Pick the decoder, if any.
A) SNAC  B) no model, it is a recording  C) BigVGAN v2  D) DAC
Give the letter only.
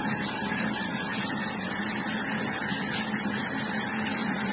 B